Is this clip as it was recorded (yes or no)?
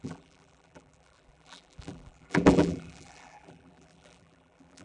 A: no